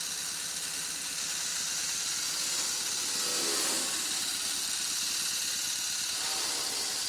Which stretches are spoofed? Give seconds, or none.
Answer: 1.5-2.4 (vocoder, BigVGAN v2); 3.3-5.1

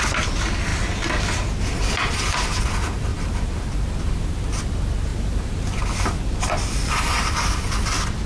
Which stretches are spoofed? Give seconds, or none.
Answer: 3.1-3.6 (vocoder, BigVGAN v2); 5.1-5.8

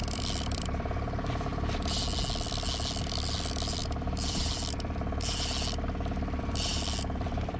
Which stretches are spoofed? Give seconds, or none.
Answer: 0.0-1.5 (vocoder, BigVGAN v2); 3.0-7.6